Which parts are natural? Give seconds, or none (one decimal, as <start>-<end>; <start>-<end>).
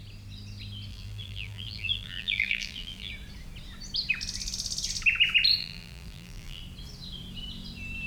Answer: 0.0-0.9; 3.1-5.6; 6.6-8.1